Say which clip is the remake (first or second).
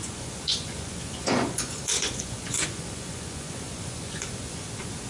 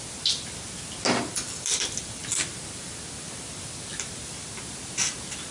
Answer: first